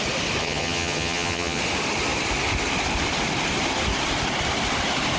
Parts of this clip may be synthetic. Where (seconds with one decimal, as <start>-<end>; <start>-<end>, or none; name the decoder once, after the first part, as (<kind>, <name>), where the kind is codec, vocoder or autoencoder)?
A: 0.4-1.6 (vocoder, HiFi-GAN)